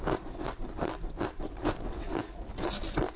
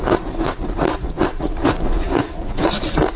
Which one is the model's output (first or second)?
second